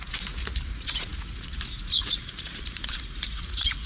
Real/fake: fake